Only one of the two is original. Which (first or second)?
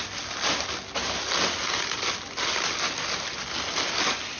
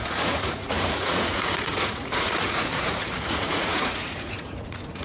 first